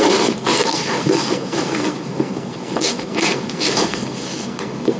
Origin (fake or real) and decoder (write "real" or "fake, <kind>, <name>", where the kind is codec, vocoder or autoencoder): fake, codec, SNAC